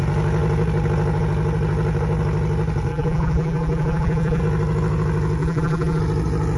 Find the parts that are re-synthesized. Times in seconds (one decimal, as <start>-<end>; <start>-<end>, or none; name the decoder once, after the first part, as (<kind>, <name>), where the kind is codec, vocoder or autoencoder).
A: 2.9-4.4 (vocoder, BigVGAN v2); 5.4-6.0